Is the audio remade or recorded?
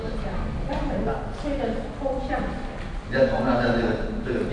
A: recorded